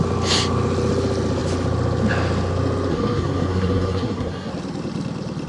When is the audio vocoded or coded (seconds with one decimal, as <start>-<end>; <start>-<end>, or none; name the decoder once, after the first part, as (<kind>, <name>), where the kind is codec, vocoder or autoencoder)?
2.9-4.5 (codec, SNAC)